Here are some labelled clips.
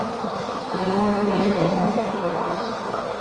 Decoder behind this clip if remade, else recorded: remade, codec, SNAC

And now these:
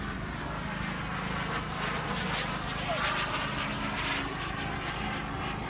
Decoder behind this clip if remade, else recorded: recorded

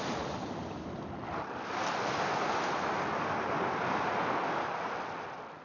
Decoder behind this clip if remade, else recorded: recorded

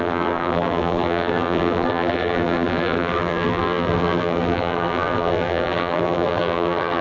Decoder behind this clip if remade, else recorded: remade, vocoder, BigVGAN v2